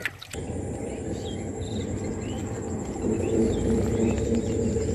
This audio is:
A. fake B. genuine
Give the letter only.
B